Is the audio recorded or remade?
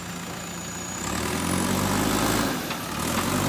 recorded